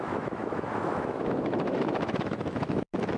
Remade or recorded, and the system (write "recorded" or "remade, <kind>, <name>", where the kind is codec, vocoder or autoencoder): remade, autoencoder, DAC-VAE